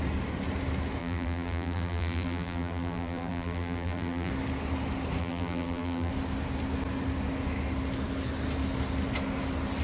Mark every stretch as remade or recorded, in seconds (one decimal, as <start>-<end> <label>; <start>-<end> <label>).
0.0-1.0 recorded; 1.0-4.3 remade; 4.3-5.2 recorded; 5.2-6.1 remade; 6.1-9.8 recorded